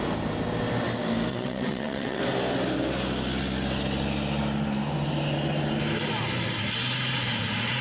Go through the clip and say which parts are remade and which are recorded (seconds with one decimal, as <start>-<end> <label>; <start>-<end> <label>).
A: 0.0-1.3 recorded; 1.3-2.2 remade; 2.2-7.8 recorded